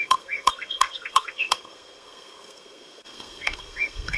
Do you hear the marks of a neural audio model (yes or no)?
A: yes